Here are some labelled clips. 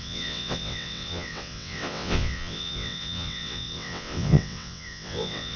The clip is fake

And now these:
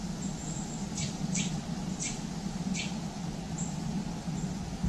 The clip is fake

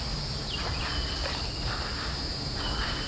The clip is real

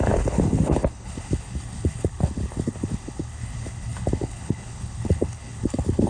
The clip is fake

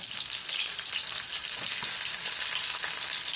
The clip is real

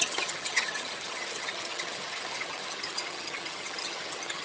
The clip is fake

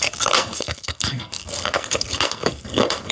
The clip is fake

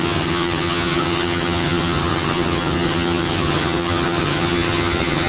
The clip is fake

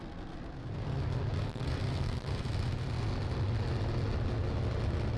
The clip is real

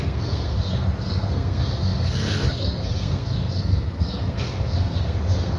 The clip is fake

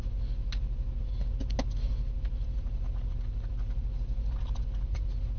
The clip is real